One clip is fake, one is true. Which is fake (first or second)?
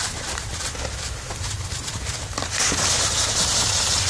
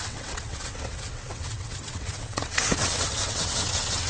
second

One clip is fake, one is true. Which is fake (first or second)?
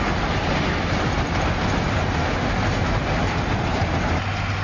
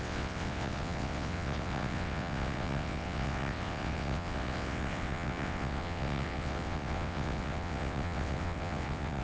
second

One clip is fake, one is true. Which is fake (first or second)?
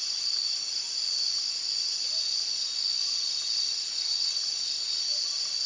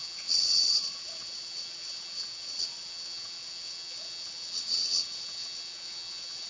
second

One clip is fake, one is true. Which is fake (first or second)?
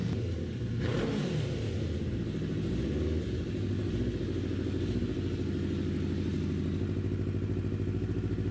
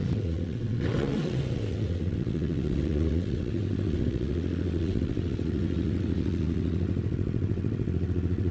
second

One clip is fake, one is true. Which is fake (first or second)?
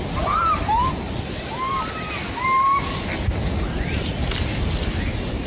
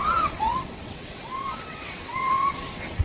second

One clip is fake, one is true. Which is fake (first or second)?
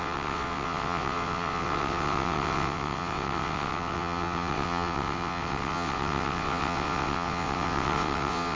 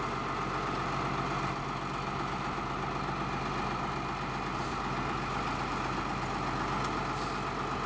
first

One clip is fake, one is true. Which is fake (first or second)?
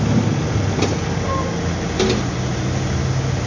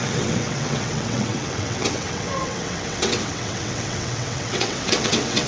second